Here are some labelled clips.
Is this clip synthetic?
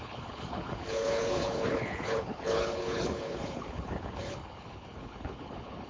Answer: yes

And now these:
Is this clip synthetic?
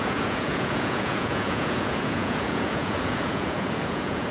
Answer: yes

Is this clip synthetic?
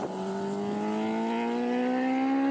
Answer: no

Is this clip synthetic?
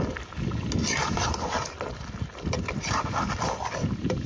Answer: no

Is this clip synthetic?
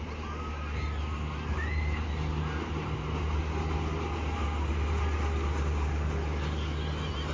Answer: no